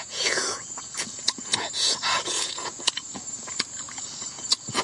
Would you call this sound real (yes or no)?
no